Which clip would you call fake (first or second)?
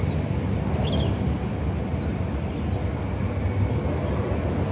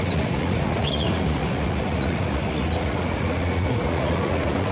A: second